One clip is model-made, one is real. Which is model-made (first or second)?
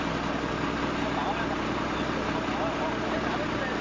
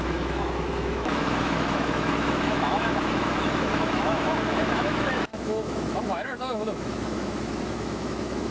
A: second